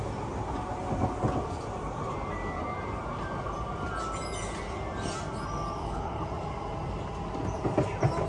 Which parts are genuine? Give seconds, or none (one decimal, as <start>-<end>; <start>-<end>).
0.0-5.8; 6.3-8.3